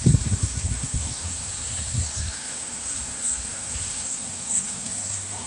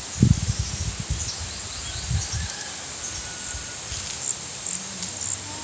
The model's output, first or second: first